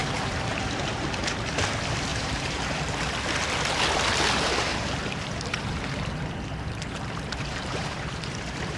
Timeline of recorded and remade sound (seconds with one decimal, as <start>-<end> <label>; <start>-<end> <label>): 0.0-1.0 remade; 1.0-2.1 recorded; 2.1-3.1 remade; 3.1-4.7 recorded; 4.7-8.8 remade